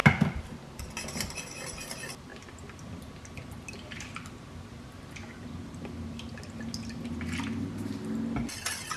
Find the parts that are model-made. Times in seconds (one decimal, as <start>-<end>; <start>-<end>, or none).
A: none